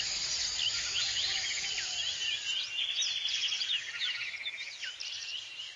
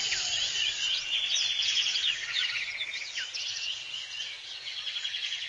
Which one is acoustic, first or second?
first